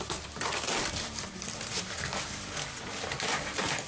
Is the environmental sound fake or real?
fake